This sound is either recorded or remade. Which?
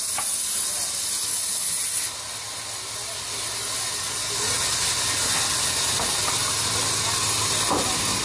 recorded